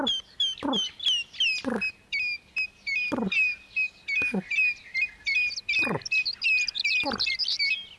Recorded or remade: recorded